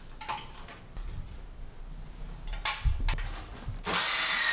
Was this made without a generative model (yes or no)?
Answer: yes